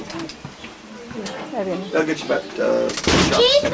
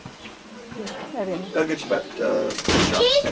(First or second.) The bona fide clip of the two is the first